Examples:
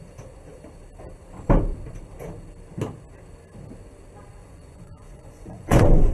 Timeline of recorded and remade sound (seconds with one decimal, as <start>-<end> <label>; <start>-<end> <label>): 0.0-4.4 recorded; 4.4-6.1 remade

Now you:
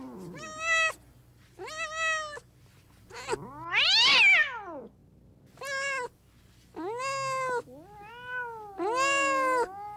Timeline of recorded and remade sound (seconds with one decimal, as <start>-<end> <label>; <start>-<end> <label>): 0.0-10.0 recorded

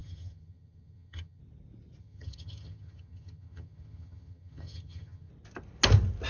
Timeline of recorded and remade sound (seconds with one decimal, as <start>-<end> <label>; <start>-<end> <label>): 0.0-1.4 remade; 1.4-2.0 recorded; 2.0-5.3 remade; 5.3-6.3 recorded